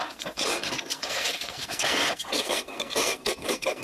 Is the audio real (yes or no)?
no